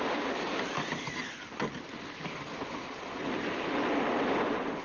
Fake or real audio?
fake